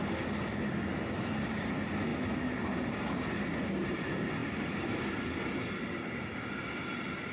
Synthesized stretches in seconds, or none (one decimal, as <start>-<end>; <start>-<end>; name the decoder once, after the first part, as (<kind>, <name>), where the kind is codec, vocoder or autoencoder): none

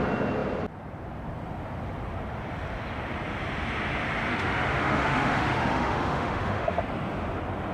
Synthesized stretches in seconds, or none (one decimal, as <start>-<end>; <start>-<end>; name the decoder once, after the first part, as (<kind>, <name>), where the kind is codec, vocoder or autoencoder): 4.3-6.8 (autoencoder, DAC-VAE)